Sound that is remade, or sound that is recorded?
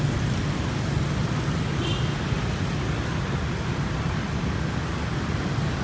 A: recorded